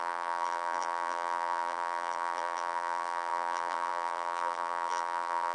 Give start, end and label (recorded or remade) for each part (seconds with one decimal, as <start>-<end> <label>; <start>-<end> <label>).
0.0-5.5 remade